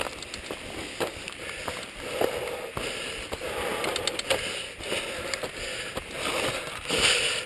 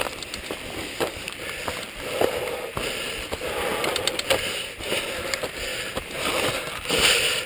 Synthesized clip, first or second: second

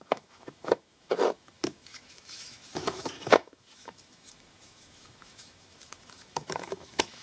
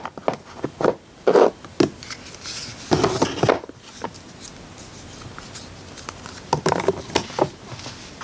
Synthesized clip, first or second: first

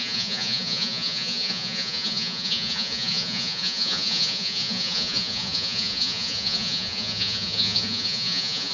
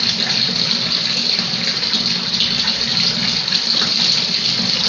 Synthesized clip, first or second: first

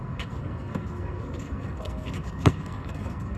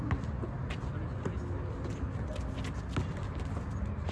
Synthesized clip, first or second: first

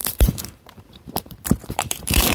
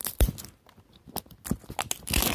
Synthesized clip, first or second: first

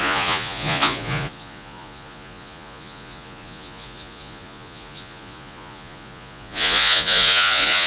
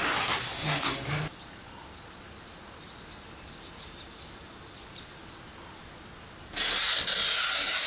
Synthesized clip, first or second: first